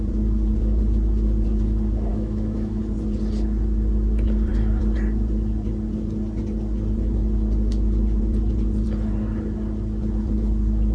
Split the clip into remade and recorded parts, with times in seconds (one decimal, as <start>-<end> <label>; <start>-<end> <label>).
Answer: 0.0-2.1 recorded; 2.1-2.8 remade; 2.8-10.9 recorded